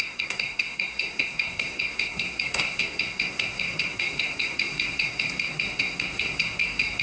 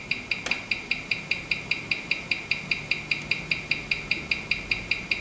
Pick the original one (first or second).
second